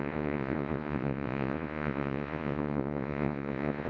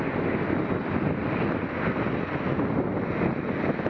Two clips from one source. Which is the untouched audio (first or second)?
second